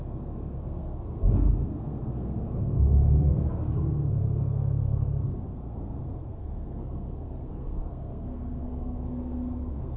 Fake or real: fake